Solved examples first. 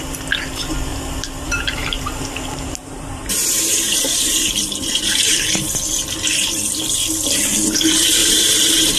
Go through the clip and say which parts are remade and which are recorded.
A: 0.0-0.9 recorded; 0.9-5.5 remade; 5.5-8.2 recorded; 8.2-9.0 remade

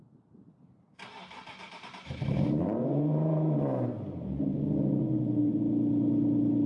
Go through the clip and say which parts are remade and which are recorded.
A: 0.0-1.6 recorded; 1.6-4.7 remade; 4.7-6.7 recorded

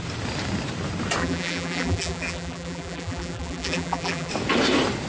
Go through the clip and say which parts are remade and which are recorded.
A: 0.0-1.2 recorded; 1.2-4.3 remade; 4.3-5.1 recorded

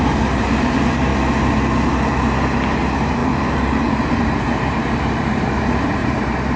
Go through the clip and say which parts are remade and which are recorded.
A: 0.0-1.1 remade; 1.1-2.7 recorded; 2.7-6.6 remade

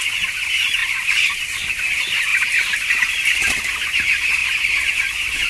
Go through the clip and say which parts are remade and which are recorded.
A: 0.0-0.8 recorded; 0.8-1.8 remade; 1.8-4.4 recorded; 4.4-5.5 remade

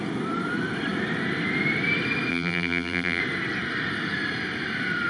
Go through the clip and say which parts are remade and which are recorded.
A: 0.0-2.3 recorded; 2.3-3.2 remade; 3.2-5.1 recorded

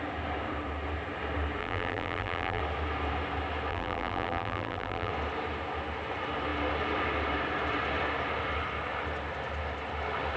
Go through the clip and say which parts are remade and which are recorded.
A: 0.0-1.6 recorded; 1.6-2.6 remade; 2.6-3.7 recorded; 3.7-5.1 remade; 5.1-10.4 recorded